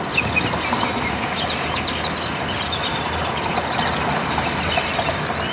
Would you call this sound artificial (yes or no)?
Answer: no